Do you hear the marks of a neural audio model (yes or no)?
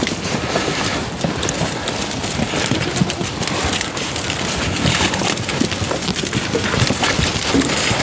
no